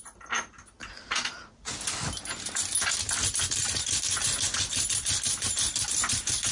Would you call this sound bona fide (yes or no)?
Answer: yes